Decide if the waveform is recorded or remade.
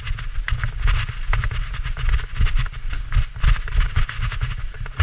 recorded